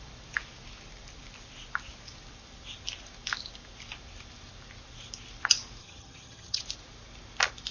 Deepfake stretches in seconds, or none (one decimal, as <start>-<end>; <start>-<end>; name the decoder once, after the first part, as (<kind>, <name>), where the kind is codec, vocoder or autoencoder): 5.8-6.6 (vocoder, HiFi-GAN)